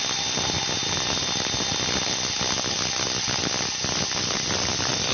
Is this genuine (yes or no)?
yes